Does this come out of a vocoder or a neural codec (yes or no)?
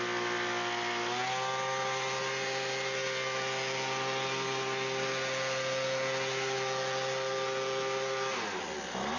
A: no